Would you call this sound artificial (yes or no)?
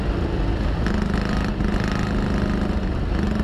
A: no